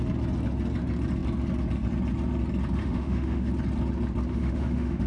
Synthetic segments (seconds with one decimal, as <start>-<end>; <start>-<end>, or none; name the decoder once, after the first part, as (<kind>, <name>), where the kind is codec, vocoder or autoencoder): 2.8-3.5 (autoencoder, DAC-VAE); 4.3-5.1